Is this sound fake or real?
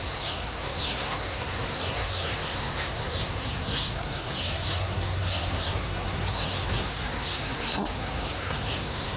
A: fake